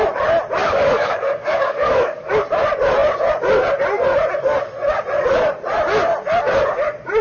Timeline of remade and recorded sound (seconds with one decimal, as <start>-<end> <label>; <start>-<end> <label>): 0.0-0.6 recorded; 0.6-2.3 remade; 2.3-7.2 recorded